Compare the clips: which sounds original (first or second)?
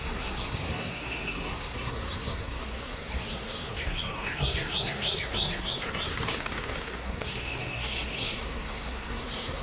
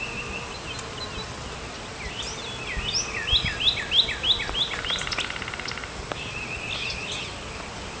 second